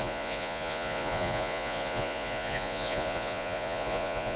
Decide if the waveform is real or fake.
fake